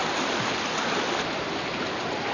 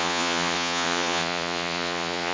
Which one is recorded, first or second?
first